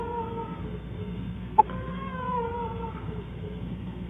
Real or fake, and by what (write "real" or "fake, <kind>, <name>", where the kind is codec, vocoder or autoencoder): fake, codec, SNAC